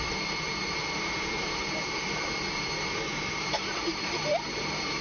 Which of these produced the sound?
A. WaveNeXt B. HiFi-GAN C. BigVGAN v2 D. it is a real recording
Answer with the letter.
C